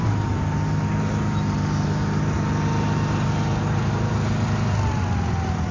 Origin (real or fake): real